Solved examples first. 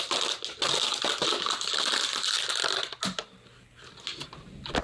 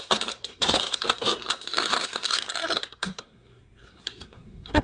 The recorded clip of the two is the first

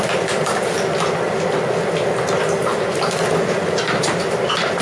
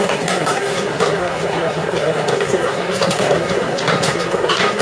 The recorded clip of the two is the first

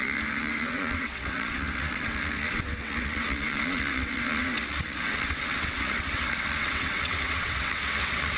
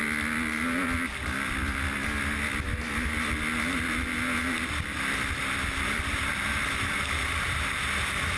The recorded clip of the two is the second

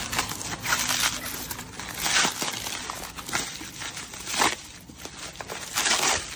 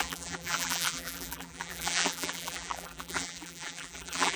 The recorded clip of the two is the first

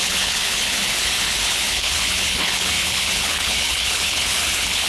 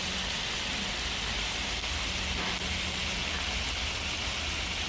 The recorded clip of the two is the second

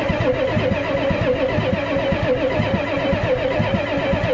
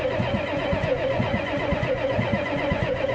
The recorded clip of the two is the first